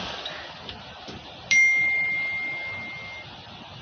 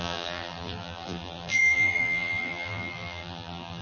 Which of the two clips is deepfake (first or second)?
second